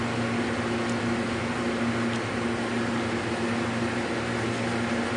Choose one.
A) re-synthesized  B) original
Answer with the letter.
B